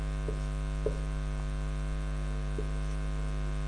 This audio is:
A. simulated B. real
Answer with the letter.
B